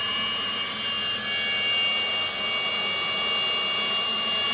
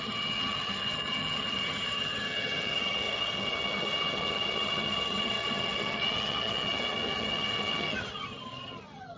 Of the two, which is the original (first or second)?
first